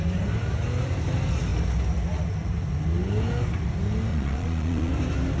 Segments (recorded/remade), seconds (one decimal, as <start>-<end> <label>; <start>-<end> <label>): 0.0-4.1 recorded; 4.1-4.9 remade; 4.9-5.4 recorded